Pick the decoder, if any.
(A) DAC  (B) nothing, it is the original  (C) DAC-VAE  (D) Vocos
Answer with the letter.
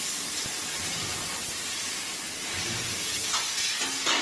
B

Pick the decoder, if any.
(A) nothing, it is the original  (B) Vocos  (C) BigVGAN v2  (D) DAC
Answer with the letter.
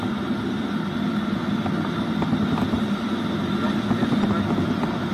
A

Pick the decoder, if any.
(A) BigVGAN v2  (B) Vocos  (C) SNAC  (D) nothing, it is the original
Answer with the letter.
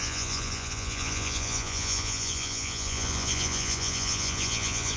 B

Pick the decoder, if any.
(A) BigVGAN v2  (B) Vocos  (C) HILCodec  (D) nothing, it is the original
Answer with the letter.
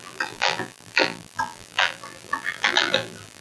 A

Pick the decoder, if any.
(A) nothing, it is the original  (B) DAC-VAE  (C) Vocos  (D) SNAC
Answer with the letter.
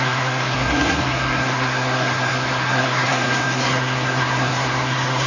D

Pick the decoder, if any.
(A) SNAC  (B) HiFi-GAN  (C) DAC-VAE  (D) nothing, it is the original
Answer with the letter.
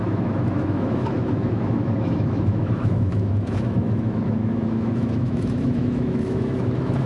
C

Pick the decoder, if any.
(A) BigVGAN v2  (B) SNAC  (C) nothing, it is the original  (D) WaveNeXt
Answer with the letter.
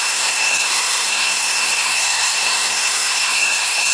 B